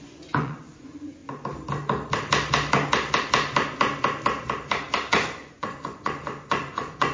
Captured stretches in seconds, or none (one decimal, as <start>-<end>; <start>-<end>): 1.2-5.1